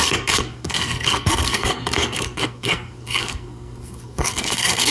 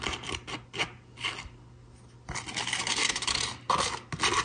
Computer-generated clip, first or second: first